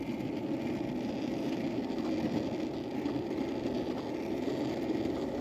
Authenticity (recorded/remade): recorded